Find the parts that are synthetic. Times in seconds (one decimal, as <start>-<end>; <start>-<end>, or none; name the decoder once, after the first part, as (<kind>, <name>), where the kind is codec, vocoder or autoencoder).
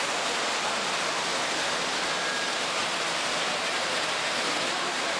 none